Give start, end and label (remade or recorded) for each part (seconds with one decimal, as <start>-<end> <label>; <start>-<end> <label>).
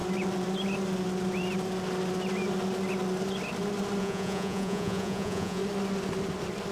0.0-4.0 recorded; 4.0-5.6 remade; 5.6-6.7 recorded